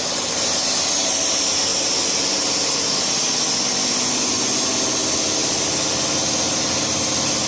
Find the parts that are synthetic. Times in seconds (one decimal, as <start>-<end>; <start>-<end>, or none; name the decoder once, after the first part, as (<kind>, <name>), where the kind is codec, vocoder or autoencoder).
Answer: none